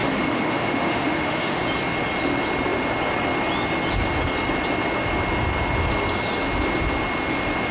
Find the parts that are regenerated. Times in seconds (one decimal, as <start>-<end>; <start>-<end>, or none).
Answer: 0.0-1.6